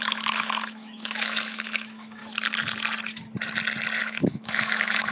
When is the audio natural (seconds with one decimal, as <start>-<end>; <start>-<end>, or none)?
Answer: 2.2-4.0